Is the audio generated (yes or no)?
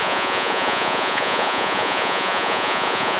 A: yes